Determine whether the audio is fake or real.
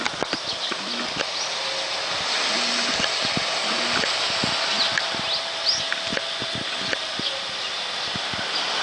real